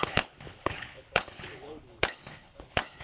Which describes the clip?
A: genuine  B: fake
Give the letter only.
B